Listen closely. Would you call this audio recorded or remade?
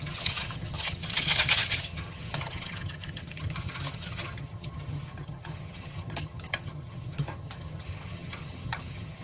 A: remade